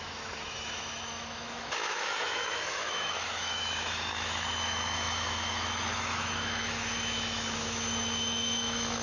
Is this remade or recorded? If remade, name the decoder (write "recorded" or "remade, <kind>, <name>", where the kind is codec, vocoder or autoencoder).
remade, autoencoder, DAC-VAE